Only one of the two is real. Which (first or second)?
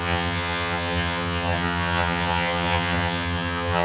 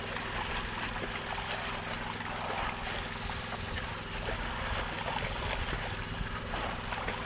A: second